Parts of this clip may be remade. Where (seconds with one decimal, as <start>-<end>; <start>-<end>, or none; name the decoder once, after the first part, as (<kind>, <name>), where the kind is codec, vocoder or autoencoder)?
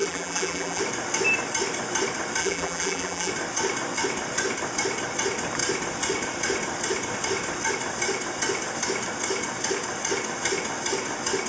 0.0-0.8 (vocoder, BigVGAN v2); 2.4-3.3